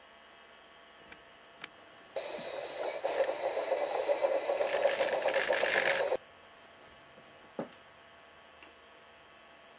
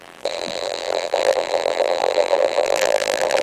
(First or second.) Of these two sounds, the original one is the first